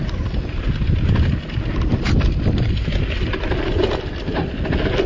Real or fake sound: fake